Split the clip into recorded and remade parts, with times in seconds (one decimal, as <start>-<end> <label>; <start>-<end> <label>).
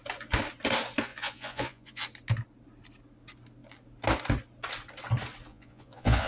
0.0-1.1 recorded; 1.1-2.0 remade; 2.0-5.5 recorded; 5.5-6.3 remade